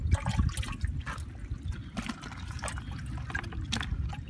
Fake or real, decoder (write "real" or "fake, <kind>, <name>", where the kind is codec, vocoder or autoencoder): real